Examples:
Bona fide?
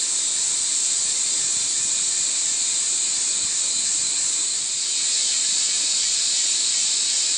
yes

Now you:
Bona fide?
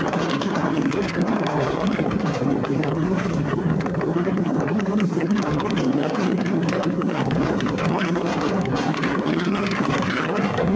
no